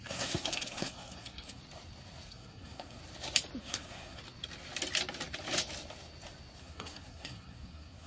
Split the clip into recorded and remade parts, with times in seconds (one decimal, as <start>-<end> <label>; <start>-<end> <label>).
0.0-1.6 remade; 1.6-2.3 recorded; 2.3-3.0 remade; 3.0-3.6 recorded; 3.6-4.2 remade; 4.2-6.6 recorded; 6.6-8.1 remade